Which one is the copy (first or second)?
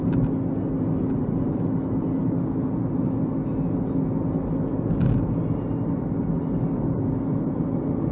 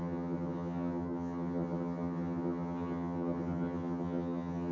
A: second